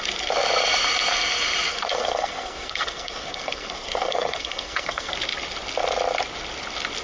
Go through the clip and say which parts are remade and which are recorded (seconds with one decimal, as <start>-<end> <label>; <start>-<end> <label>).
0.0-1.7 recorded; 1.7-5.1 remade; 5.1-7.0 recorded